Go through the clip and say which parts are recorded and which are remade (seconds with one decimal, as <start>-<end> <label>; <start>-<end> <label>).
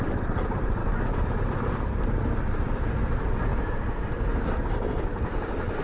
0.0-0.8 recorded; 0.8-1.4 remade; 1.4-5.8 recorded